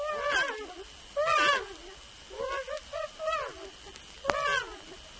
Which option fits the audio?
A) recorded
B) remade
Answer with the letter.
A